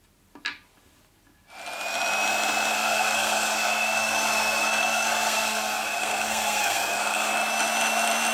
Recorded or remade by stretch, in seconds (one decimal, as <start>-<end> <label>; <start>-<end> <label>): 0.0-2.7 recorded; 2.7-7.3 remade; 7.3-8.3 recorded